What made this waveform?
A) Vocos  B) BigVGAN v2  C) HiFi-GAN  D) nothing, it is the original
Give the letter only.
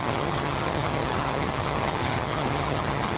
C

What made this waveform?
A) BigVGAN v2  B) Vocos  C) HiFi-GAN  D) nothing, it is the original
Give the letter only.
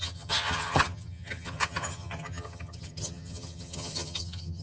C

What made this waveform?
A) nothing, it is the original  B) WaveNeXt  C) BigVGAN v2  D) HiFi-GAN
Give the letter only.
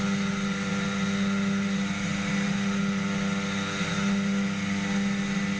A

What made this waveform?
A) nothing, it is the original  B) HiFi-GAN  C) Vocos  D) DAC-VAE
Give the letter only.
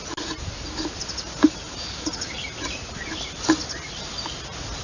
A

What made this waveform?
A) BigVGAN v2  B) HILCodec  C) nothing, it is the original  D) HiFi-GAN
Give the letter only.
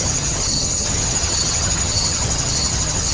D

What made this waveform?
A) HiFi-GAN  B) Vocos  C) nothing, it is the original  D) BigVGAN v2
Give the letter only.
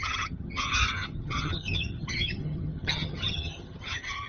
A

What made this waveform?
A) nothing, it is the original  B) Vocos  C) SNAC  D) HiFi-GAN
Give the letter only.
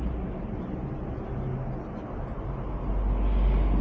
A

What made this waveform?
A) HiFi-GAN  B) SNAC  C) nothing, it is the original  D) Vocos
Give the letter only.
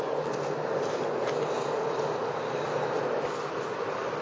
C